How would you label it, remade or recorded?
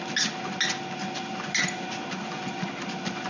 recorded